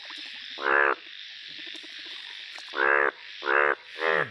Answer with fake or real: real